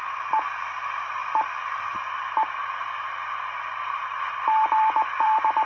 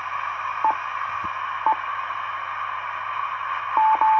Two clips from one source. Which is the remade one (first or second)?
first